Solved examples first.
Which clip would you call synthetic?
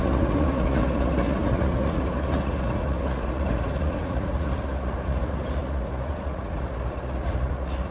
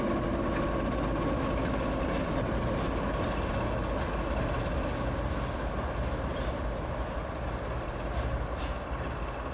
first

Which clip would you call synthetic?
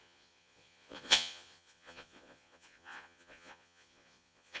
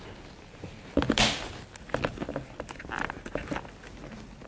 first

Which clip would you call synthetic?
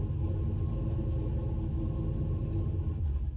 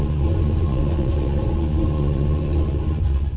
second